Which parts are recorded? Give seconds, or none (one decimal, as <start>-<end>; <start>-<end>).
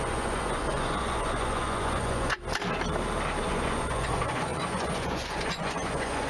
2.4-3.4